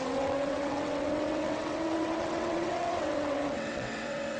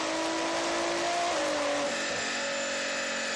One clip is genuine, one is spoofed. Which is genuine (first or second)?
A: second